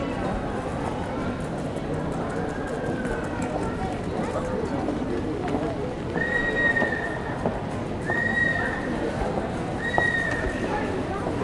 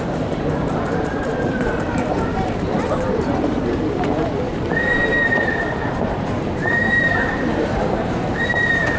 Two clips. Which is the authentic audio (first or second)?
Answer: first